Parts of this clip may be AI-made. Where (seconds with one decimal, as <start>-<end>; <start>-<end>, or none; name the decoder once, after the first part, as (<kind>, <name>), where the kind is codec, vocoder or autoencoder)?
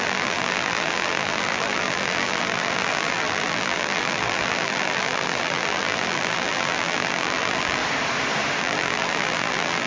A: 0.0-7.8 (vocoder, BigVGAN v2); 8.6-9.9